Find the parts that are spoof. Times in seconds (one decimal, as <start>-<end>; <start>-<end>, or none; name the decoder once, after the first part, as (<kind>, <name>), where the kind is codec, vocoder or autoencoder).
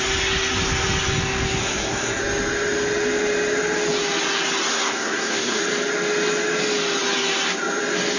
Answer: 1.6-2.2 (codec, SNAC); 4.7-5.6